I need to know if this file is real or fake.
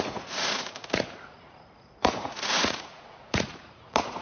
fake